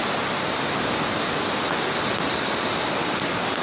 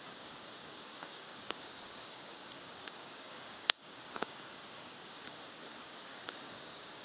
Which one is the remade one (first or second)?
second